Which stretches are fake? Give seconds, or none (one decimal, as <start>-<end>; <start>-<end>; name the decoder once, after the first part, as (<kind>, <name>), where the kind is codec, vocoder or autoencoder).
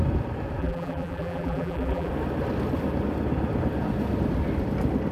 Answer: 0.6-2.1 (vocoder, BigVGAN v2)